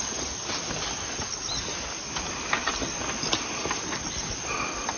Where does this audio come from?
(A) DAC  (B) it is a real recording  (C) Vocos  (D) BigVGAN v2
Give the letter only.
B